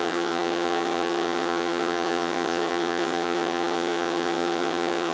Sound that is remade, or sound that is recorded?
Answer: remade